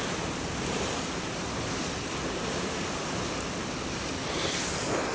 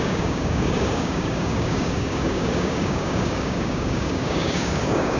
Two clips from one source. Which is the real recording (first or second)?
first